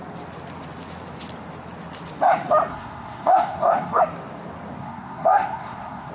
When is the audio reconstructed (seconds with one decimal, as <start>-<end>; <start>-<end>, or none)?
2.7-4.0; 4.8-6.1